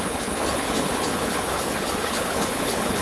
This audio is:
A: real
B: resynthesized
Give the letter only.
B